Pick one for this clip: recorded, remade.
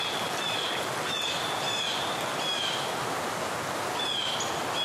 recorded